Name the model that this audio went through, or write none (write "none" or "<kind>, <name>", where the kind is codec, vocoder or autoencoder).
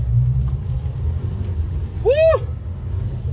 none